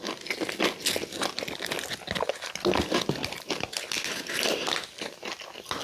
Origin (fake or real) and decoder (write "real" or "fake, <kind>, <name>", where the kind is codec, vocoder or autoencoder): real